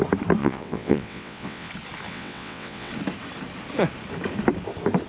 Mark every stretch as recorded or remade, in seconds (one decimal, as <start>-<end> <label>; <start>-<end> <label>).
0.0-0.4 recorded; 0.4-1.7 remade; 1.7-2.1 recorded; 2.1-2.9 remade; 2.9-5.1 recorded